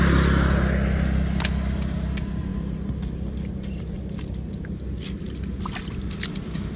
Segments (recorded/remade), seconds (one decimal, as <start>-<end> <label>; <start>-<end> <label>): 0.0-6.8 recorded